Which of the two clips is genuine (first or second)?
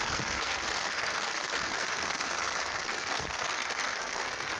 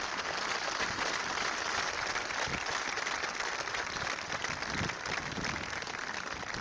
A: second